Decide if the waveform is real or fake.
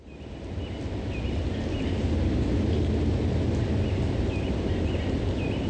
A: real